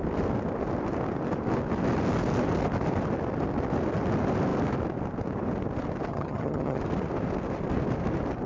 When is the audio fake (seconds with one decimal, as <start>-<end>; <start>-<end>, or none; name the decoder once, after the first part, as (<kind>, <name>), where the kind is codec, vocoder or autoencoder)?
6.1-6.8 (vocoder, HiFi-GAN)